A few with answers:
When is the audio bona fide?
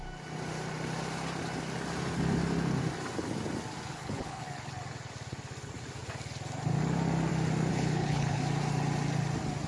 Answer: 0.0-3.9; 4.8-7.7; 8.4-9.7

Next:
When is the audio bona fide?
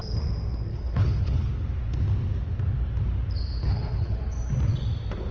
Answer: 0.0-0.7; 1.5-3.6; 4.2-5.3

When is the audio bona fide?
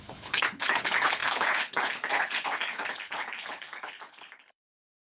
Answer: none